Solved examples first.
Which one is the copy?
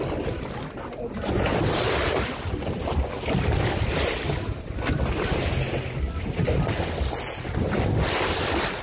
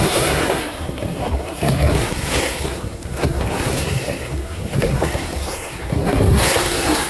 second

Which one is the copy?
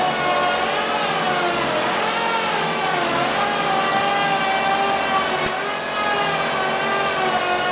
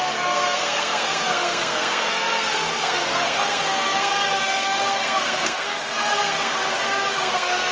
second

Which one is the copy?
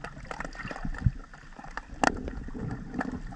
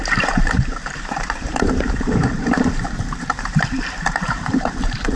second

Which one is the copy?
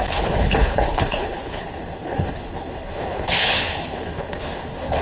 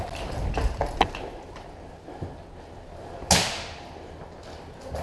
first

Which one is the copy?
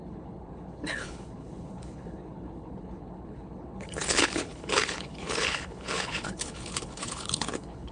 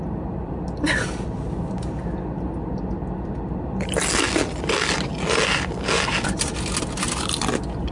first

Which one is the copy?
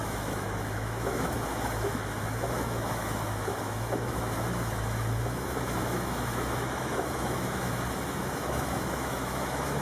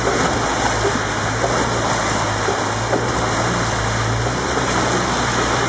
first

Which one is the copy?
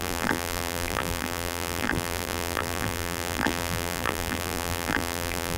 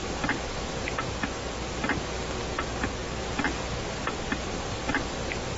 first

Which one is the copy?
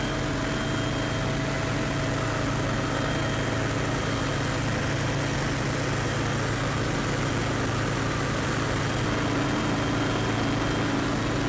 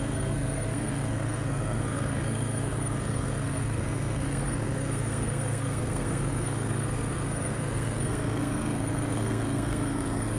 second